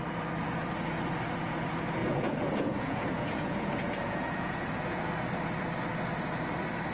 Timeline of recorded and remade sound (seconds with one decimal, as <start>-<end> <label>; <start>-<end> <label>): 0.0-2.0 recorded; 2.0-5.1 remade; 5.1-6.9 recorded